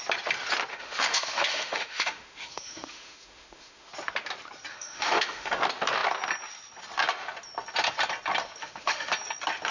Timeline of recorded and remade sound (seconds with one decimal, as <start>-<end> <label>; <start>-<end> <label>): 0.0-0.7 recorded; 0.7-3.9 remade; 3.9-4.7 recorded; 4.7-5.5 remade; 5.5-8.6 recorded; 8.6-9.1 remade; 9.1-9.7 recorded